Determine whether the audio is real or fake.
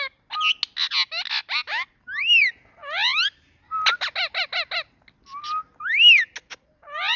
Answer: real